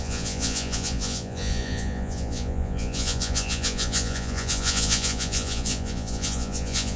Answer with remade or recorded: remade